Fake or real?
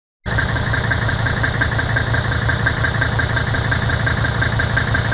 real